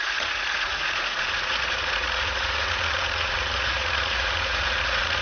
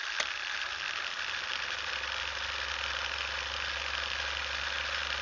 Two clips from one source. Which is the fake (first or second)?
first